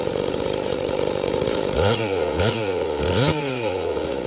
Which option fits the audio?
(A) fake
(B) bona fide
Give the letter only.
A